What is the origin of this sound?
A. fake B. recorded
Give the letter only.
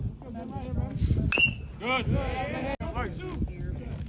B